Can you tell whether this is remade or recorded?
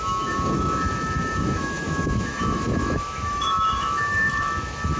remade